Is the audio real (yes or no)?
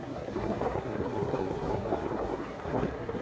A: no